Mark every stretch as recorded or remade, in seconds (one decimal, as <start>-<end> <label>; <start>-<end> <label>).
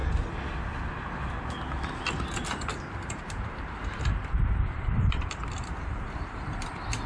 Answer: 0.0-2.7 recorded; 2.7-6.4 remade; 6.4-7.1 recorded